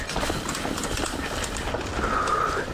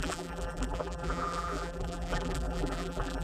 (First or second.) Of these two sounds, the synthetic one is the second